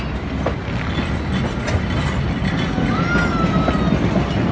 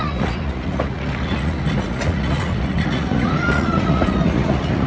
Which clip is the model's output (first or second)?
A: second